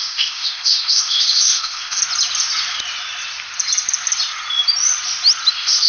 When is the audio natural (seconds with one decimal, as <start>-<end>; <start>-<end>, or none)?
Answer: 2.0-5.5